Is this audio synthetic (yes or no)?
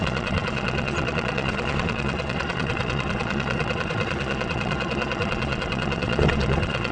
yes